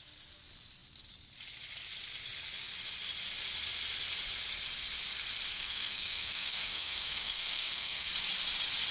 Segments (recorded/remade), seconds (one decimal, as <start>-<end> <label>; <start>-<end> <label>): 0.0-5.5 recorded; 5.5-8.1 remade; 8.1-8.9 recorded